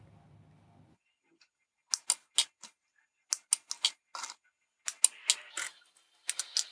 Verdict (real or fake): real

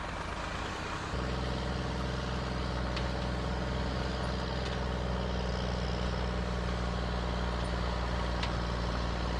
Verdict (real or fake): real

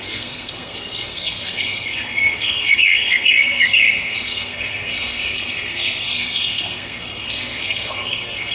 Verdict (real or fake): fake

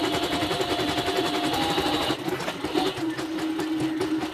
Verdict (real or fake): real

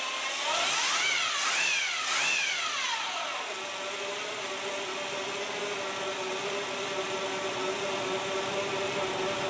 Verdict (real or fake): real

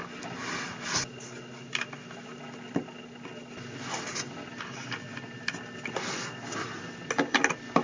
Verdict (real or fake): real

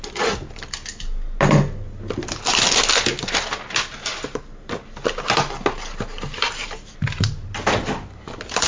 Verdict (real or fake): real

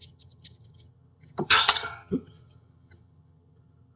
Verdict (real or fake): fake